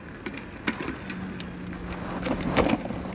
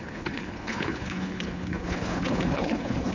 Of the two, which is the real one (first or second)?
first